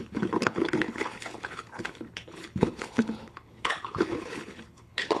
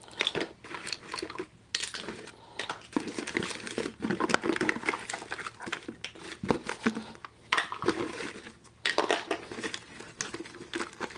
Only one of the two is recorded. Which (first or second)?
second